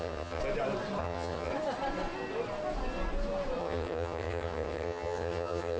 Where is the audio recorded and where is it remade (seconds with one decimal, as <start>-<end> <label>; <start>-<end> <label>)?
0.0-0.4 remade; 0.4-1.0 recorded; 1.0-1.5 remade; 1.5-3.6 recorded; 3.6-5.8 remade